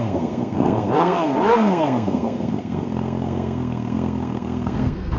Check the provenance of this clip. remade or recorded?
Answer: remade